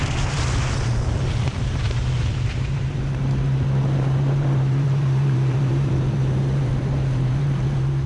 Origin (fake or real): fake